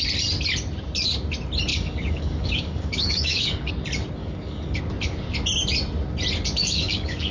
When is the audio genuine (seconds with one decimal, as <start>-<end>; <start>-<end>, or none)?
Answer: 0.0-1.7; 3.7-4.2; 4.8-6.6